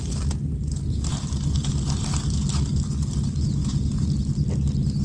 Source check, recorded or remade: recorded